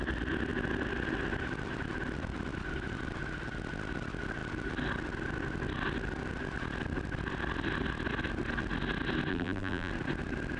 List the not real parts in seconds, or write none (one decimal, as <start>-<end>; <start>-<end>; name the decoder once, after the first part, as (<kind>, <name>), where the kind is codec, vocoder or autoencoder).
9.3-9.9 (vocoder, BigVGAN v2)